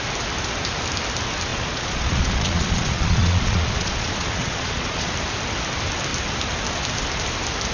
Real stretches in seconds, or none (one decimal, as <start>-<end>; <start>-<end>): 0.0-1.5; 5.1-7.7